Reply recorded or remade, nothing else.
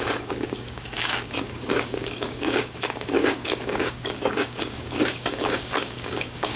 remade